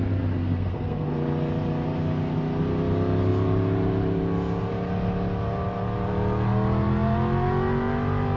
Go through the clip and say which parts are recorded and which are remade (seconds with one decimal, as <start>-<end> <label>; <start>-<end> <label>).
0.0-0.4 recorded; 0.4-1.1 remade; 1.1-8.4 recorded